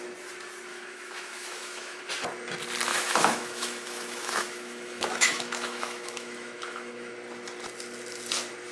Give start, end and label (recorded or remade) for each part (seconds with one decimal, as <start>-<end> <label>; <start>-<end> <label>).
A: 0.0-0.7 recorded; 0.7-2.1 remade; 2.1-2.9 recorded; 2.9-7.1 remade; 7.1-8.7 recorded